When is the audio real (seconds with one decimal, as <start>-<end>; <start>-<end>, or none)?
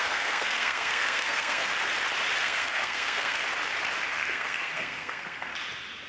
1.6-2.4; 3.4-4.1; 5.5-6.1